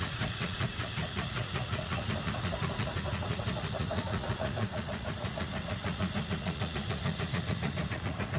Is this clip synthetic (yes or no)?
yes